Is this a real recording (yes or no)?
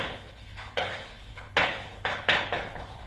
no